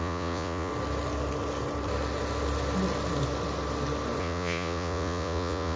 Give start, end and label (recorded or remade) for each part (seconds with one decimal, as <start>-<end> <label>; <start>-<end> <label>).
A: 0.0-0.7 remade; 0.7-4.2 recorded; 4.2-5.8 remade